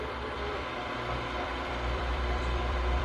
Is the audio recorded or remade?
remade